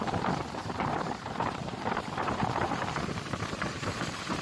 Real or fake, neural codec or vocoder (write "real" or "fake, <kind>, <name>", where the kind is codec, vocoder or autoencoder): fake, vocoder, BigVGAN v2